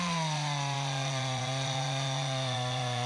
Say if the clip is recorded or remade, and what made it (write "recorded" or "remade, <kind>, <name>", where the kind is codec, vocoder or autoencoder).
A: remade, vocoder, Vocos